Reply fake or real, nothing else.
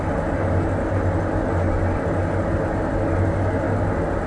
real